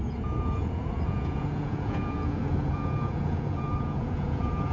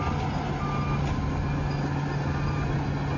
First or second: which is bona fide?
second